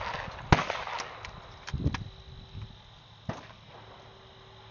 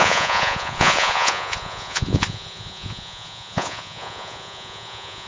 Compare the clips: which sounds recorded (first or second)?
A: first